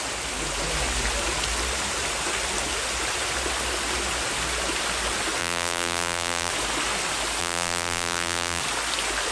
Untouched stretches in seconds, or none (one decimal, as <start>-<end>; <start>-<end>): 0.0-5.4; 6.5-7.4; 8.6-9.3